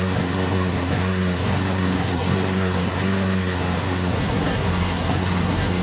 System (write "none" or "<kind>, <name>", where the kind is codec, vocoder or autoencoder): codec, SNAC